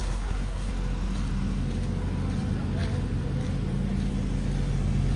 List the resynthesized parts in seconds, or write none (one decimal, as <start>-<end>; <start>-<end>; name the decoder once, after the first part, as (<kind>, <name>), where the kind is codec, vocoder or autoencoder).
0.0-0.7 (codec, SNAC)